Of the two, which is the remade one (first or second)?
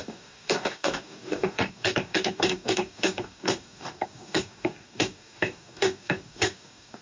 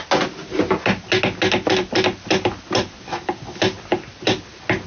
first